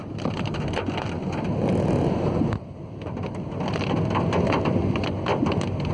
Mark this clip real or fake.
real